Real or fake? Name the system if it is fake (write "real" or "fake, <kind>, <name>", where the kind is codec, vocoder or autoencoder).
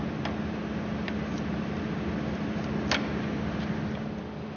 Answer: real